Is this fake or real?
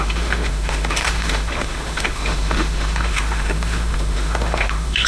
fake